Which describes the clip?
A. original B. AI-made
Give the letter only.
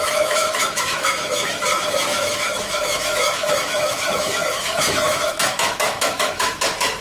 B